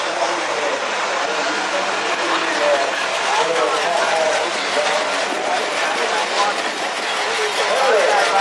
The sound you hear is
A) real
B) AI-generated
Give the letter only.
A